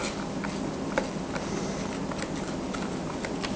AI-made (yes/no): no